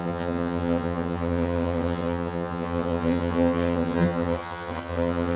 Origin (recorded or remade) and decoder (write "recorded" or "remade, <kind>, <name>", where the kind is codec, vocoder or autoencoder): remade, vocoder, HiFi-GAN